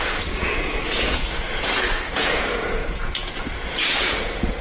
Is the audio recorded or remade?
remade